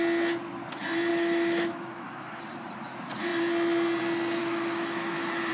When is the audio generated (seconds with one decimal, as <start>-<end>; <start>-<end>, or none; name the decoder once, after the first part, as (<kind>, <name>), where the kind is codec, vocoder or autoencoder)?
1.1-2.4 (autoencoder, DAC-VAE); 4.4-5.5